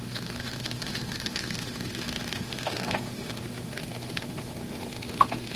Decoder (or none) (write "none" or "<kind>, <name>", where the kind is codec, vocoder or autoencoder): autoencoder, DAC-VAE